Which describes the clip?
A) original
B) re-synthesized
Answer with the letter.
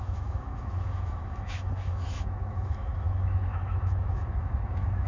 B